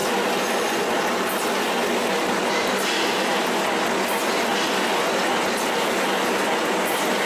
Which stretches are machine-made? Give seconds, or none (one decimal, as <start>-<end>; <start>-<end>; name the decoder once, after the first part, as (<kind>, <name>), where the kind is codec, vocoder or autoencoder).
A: 2.4-3.4 (vocoder, BigVGAN v2)